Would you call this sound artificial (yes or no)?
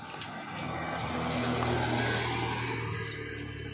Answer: no